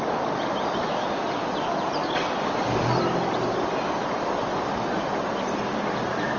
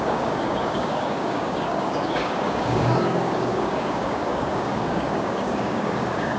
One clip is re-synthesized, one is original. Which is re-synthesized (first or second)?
second